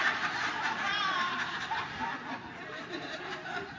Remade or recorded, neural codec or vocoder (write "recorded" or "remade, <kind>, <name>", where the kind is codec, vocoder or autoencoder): remade, vocoder, BigVGAN v2